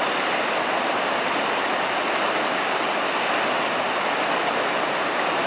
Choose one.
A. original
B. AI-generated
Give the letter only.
A